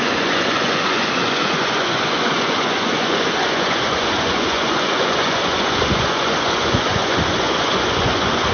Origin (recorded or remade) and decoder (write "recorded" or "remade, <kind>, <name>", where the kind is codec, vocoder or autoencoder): remade, vocoder, Vocos